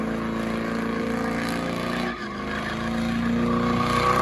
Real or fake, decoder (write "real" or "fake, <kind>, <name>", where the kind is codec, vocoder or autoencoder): real